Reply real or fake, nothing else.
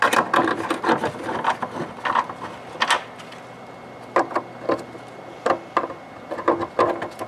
real